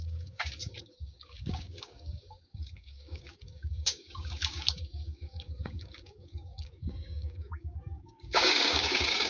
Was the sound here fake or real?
fake